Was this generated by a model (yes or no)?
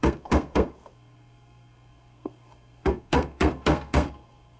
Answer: yes